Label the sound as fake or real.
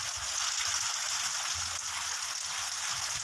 real